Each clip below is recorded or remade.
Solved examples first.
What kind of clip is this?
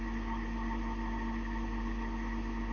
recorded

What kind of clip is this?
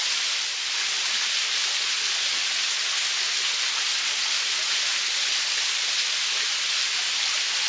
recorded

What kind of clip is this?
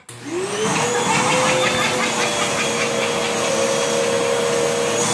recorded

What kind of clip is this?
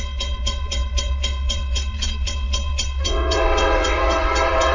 remade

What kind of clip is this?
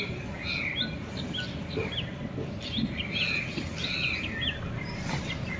recorded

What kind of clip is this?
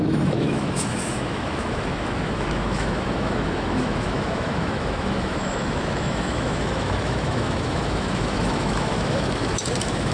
remade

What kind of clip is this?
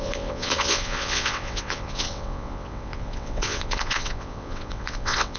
remade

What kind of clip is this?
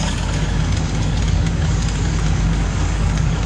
remade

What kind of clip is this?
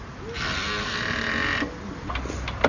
recorded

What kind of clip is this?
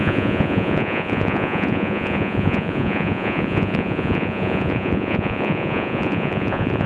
remade